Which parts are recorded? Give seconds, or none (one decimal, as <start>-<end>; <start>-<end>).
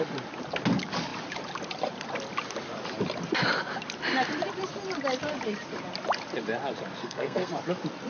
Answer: 0.0-7.0; 7.5-8.1